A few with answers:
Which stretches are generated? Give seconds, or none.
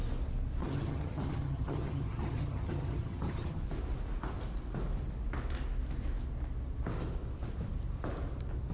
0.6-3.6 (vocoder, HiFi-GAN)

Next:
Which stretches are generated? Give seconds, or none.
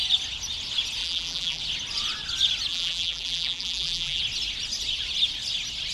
1.0-1.6 (vocoder, BigVGAN v2); 2.7-4.2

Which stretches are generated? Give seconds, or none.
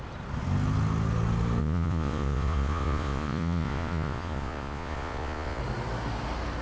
1.6-5.6 (vocoder, Vocos)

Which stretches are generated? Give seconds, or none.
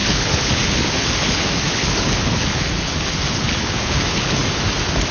0.0-4.4 (codec, HILCodec)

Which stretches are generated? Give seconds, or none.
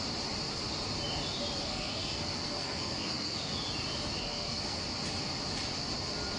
1.6-3.5 (codec, SNAC); 4.2-4.8